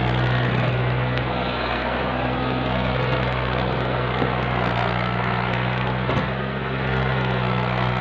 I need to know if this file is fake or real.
fake